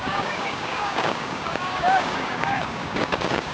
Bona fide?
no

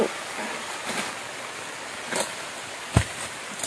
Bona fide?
no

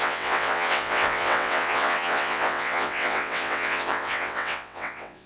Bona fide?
no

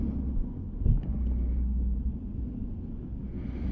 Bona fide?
yes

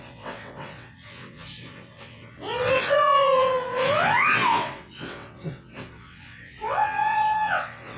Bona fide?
no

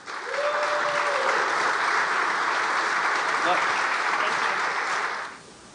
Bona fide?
yes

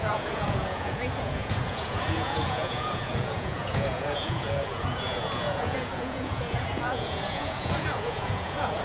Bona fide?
no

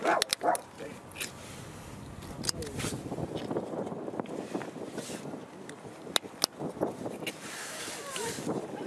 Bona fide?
yes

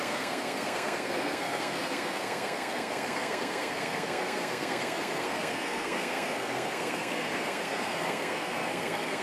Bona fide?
no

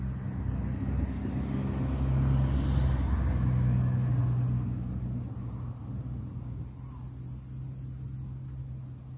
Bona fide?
yes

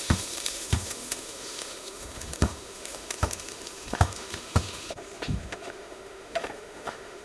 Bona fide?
no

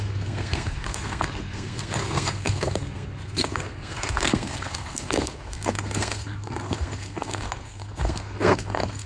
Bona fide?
no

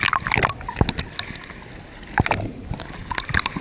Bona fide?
yes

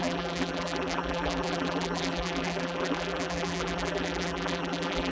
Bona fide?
no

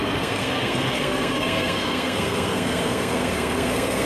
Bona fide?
no